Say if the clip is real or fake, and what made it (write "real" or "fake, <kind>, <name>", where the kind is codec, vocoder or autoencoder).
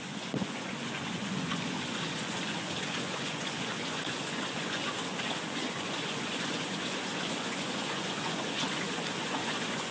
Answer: fake, vocoder, Vocos